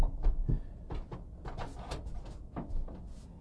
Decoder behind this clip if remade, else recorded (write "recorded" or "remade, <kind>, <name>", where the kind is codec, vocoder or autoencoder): recorded